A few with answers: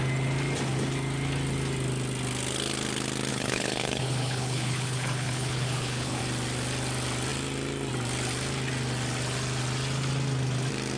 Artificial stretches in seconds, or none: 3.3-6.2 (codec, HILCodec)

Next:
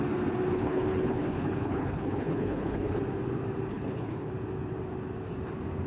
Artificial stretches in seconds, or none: 0.5-3.0 (codec, HILCodec); 3.7-4.3